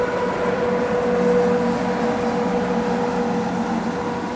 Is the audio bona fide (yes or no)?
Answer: yes